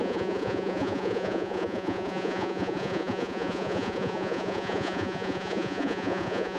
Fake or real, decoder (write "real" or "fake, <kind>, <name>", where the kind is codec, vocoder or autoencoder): fake, vocoder, Vocos